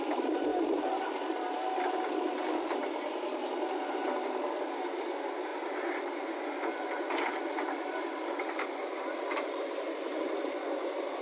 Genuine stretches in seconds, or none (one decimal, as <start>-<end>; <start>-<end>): 2.8-4.5